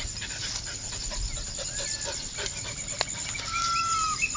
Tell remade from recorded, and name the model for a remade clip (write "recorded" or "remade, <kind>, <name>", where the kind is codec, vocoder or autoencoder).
recorded